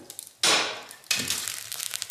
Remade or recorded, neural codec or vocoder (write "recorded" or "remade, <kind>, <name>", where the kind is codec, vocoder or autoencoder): recorded